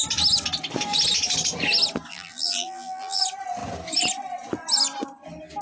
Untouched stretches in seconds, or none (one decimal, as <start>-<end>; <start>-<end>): 0.0-2.1; 3.2-5.6